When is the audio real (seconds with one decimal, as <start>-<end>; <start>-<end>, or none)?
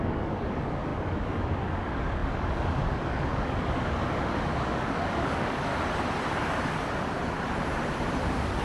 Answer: 5.7-8.2